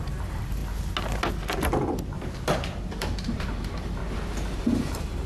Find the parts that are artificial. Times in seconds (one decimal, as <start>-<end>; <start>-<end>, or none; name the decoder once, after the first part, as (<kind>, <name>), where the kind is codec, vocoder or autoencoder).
0.0-0.6 (vocoder, BigVGAN v2); 3.0-4.0; 4.6-5.3